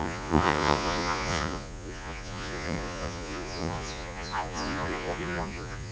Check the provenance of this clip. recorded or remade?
remade